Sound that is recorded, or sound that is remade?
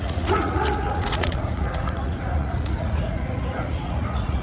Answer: remade